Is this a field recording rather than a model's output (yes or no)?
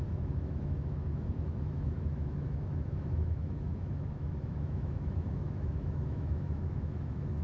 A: no